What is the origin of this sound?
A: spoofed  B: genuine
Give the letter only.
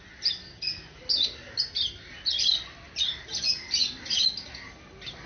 B